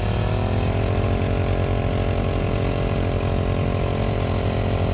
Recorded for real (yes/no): yes